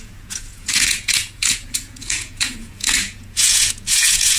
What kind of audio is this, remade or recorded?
remade